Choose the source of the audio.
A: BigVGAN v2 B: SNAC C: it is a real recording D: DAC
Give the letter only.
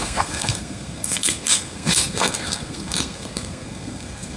B